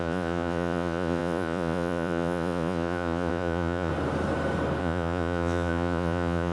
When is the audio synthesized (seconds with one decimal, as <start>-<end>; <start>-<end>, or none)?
0.0-3.9; 4.8-6.5